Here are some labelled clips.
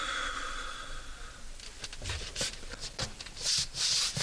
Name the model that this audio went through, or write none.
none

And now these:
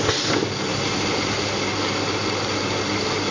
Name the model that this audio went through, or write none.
none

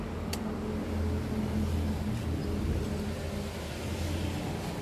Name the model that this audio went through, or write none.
none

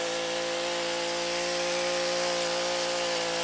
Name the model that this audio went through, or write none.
none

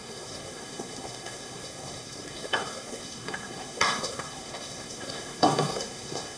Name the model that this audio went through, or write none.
codec, SNAC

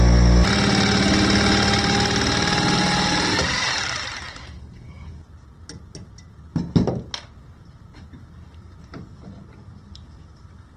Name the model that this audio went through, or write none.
none